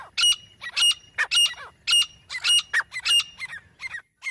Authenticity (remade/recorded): recorded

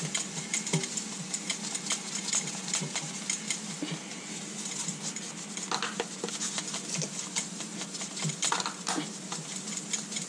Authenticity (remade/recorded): recorded